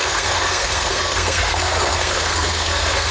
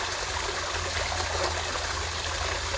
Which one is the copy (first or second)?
first